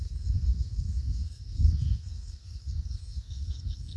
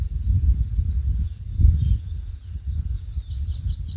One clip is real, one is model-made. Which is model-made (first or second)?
first